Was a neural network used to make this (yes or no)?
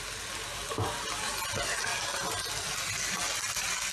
no